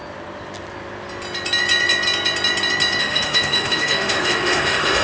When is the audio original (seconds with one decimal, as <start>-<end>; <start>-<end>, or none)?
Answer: 0.0-3.0